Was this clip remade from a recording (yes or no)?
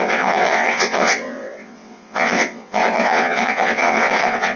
yes